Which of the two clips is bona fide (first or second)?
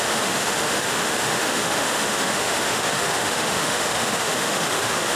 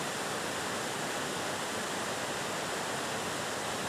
second